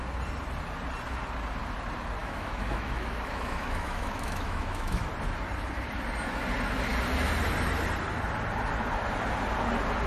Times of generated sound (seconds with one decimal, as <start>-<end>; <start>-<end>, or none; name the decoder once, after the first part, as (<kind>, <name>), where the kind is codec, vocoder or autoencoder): 2.2-5.1 (autoencoder, DAC-VAE)